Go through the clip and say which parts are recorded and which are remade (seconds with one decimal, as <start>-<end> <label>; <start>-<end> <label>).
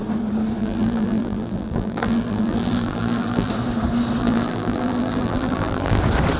0.0-0.6 recorded; 0.6-3.5 remade; 3.5-4.2 recorded; 4.2-6.0 remade; 6.0-6.4 recorded